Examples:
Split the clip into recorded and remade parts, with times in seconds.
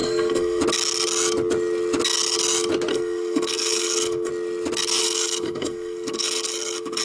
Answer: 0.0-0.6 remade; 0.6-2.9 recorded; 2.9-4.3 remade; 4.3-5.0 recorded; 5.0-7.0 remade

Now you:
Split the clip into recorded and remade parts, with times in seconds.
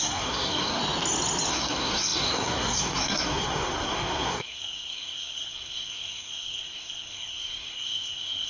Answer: 0.0-0.8 remade; 0.8-1.5 recorded; 1.5-8.5 remade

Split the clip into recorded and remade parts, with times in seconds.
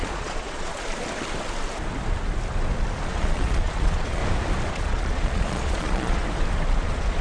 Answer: 0.0-0.7 remade; 0.7-3.1 recorded; 3.1-4.2 remade; 4.2-4.7 recorded; 4.7-6.2 remade; 6.2-6.8 recorded; 6.8-7.2 remade